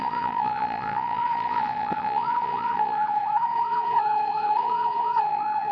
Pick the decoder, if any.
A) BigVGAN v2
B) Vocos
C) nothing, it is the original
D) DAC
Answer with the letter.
B